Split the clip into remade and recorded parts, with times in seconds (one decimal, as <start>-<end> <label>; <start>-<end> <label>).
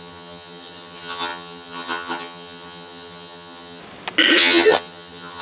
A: 0.0-3.8 remade; 3.8-4.4 recorded; 4.4-5.4 remade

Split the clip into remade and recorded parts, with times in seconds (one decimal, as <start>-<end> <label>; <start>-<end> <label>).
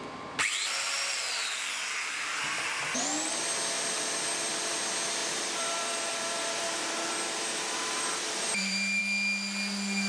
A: 0.0-5.2 recorded; 5.2-9.0 remade; 9.0-10.1 recorded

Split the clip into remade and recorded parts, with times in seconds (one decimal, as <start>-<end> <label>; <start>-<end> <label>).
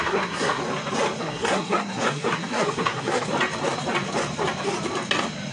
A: 0.0-0.6 remade; 0.6-1.2 recorded; 1.2-3.3 remade; 3.3-5.5 recorded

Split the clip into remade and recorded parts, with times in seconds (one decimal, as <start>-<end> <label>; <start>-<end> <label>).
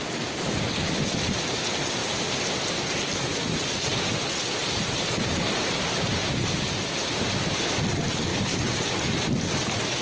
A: 0.0-2.0 recorded; 2.0-3.1 remade; 3.1-4.6 recorded; 4.6-6.3 remade; 6.3-10.0 recorded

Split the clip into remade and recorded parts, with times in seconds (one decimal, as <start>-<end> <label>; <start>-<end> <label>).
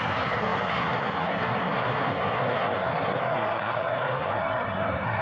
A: 0.0-5.2 remade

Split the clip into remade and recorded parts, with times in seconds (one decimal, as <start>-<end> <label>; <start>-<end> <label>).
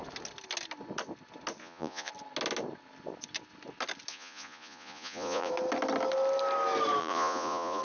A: 0.0-1.6 recorded; 1.6-2.1 remade; 2.1-4.1 recorded; 4.1-5.5 remade; 5.5-7.0 recorded; 7.0-7.8 remade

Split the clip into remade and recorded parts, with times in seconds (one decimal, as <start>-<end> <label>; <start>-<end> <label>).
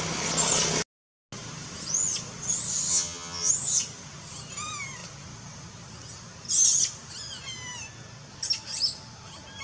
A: 0.0-2.9 recorded; 2.9-3.5 remade; 3.5-9.6 recorded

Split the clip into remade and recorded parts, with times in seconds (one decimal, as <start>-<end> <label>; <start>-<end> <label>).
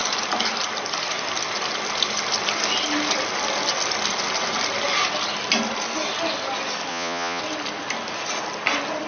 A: 0.0-6.9 recorded; 6.9-7.4 remade; 7.4-9.1 recorded